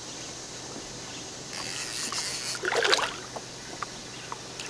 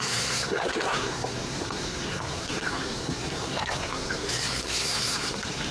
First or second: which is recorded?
first